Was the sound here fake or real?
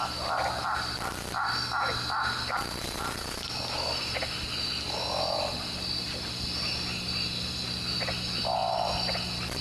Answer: real